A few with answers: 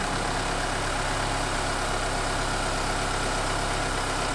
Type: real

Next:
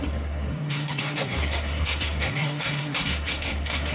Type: fake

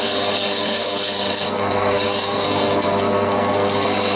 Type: fake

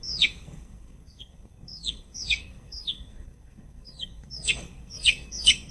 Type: fake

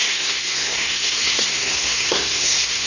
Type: fake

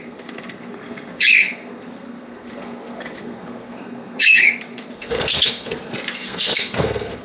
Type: fake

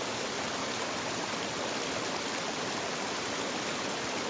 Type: real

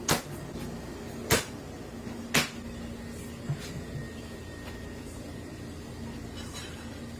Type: real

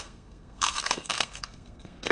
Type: fake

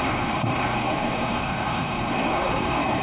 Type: fake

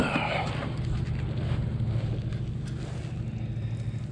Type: real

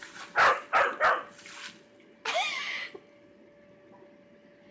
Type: real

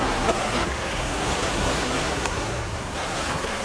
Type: fake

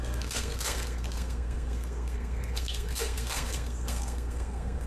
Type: fake